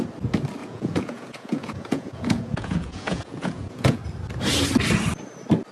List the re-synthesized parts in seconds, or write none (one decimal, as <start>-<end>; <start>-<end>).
0.6-4.0